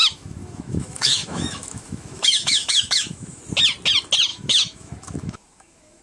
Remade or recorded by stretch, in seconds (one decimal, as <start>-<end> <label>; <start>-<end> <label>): 0.0-3.4 remade; 3.4-4.3 recorded; 4.3-6.0 remade